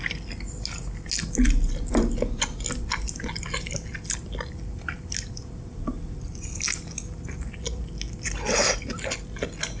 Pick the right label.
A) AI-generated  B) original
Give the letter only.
B